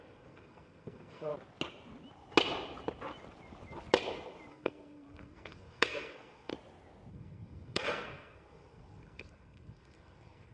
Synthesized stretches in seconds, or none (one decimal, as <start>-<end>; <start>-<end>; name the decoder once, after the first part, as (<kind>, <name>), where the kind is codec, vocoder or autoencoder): 0.0-1.3 (codec, SNAC); 4.5-6.5; 7.1-10.5